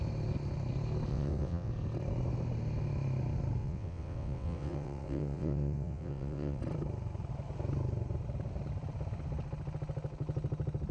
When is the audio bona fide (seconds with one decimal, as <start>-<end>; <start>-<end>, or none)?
0.0-1.1; 1.7-3.6; 6.6-10.9